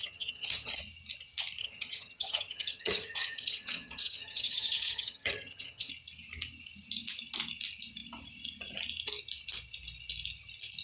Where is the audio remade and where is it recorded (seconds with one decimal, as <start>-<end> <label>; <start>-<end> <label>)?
0.0-0.7 remade; 0.7-1.6 recorded; 1.6-5.9 remade; 5.9-10.8 recorded